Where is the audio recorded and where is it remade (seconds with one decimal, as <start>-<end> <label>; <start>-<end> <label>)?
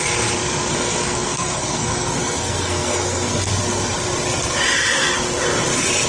0.0-0.7 recorded; 0.7-3.5 remade; 3.5-6.1 recorded